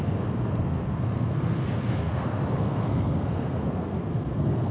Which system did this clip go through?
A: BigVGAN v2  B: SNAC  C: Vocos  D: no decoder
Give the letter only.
B